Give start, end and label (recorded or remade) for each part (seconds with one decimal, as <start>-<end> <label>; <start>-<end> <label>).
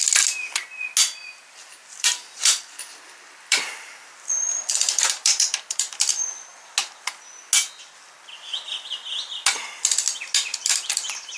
0.0-1.2 recorded; 1.2-6.1 remade; 6.1-10.5 recorded; 10.5-11.4 remade